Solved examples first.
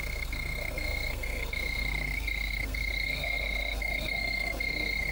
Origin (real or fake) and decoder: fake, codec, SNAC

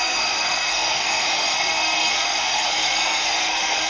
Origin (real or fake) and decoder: fake, codec, SNAC